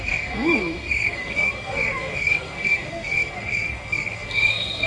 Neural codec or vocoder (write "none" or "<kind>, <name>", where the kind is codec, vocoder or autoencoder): codec, SNAC